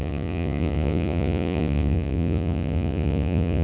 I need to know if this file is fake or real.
fake